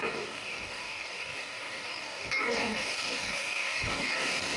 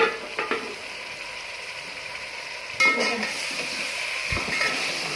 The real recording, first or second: second